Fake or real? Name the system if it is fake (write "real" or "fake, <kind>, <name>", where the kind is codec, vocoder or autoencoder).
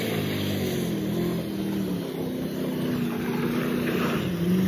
real